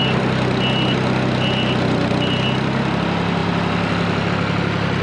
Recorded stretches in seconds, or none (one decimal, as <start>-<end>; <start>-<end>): 0.0-5.0